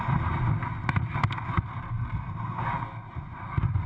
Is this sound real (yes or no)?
yes